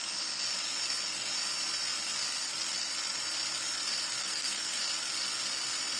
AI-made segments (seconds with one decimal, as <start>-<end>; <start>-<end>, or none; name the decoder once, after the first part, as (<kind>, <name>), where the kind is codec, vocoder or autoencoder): 4.2-4.8 (codec, SNAC)